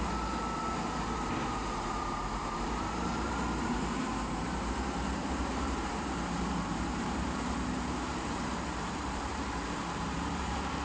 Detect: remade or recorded remade